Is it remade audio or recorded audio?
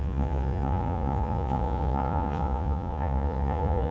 remade